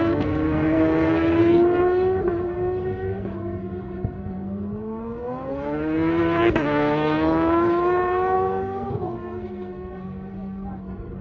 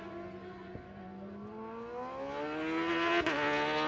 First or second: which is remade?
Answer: first